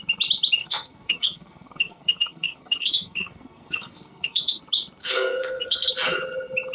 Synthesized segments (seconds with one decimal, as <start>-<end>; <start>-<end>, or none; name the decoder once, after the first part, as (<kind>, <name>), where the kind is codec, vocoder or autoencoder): 0.6-4.6 (codec, SNAC); 5.0-5.9